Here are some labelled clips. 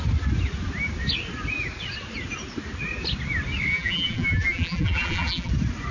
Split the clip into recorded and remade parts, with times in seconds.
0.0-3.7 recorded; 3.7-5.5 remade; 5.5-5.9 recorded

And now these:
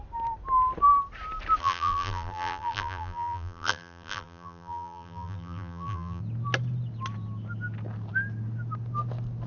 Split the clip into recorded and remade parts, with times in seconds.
0.0-1.6 recorded; 1.6-6.2 remade; 6.2-9.5 recorded

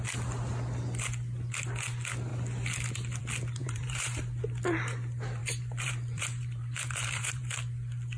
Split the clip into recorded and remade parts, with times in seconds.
0.0-3.6 recorded; 3.6-4.2 remade; 4.2-5.4 recorded; 5.4-7.5 remade; 7.5-8.2 recorded

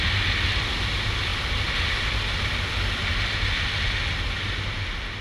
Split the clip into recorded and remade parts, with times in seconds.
0.0-5.2 recorded

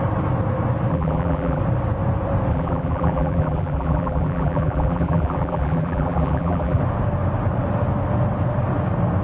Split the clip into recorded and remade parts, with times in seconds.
0.0-0.9 recorded; 0.9-1.6 remade; 1.6-2.5 recorded; 2.5-6.8 remade; 6.8-9.2 recorded

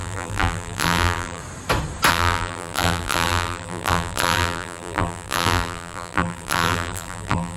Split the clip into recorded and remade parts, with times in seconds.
0.0-1.4 remade; 1.4-2.1 recorded; 2.1-7.6 remade